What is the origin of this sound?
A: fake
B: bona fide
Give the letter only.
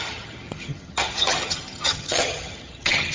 A